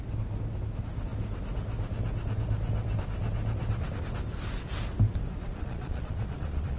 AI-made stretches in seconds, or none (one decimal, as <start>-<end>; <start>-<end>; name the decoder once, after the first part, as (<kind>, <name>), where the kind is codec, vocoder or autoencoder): 5.5-6.8 (vocoder, Vocos)